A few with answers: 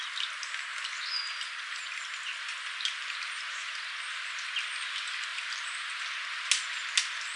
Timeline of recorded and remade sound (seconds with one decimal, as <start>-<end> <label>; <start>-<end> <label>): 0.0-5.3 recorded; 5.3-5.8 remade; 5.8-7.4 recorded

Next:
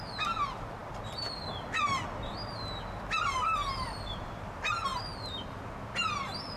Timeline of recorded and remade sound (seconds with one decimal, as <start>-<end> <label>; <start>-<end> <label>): 0.0-6.6 recorded

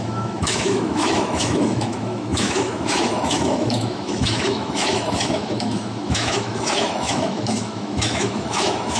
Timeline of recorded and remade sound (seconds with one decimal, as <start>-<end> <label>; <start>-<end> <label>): 0.0-9.0 remade

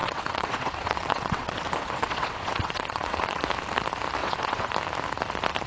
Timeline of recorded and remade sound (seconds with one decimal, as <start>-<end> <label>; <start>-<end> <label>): 0.0-3.4 remade; 3.4-4.2 recorded; 4.2-4.7 remade; 4.7-5.7 recorded